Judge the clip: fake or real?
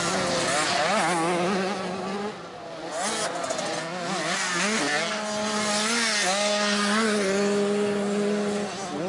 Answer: real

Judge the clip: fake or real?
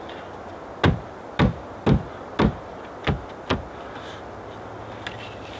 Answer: real